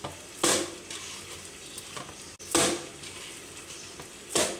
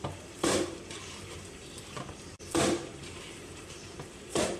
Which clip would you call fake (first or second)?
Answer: second